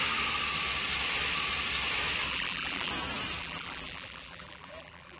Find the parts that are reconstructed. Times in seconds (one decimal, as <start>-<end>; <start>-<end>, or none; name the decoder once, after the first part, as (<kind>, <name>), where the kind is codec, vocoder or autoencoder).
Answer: 2.3-2.9 (vocoder, BigVGAN v2); 3.4-5.2